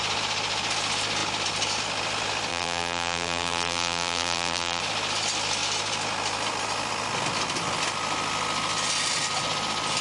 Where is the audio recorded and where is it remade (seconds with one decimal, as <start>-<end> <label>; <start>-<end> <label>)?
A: 0.0-2.5 recorded; 2.5-4.8 remade; 4.8-10.0 recorded